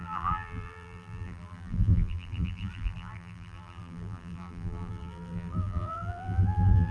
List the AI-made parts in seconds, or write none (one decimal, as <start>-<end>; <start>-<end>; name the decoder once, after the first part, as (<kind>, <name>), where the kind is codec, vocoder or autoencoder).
0.0-6.9 (vocoder, BigVGAN v2)